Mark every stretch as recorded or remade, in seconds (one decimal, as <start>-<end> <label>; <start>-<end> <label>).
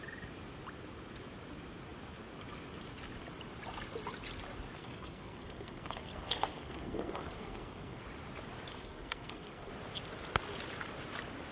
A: 0.0-4.8 recorded; 4.8-8.0 remade; 8.0-8.7 recorded; 8.7-9.7 remade; 9.7-11.5 recorded